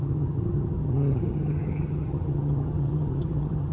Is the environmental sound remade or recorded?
remade